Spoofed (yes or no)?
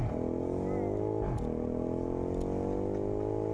no